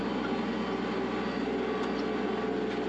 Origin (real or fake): real